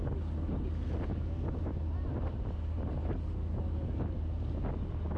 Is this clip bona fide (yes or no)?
yes